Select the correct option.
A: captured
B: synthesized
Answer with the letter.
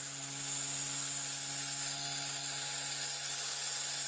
A